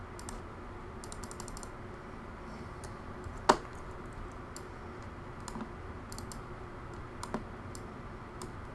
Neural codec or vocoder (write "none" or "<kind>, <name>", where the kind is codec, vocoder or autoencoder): none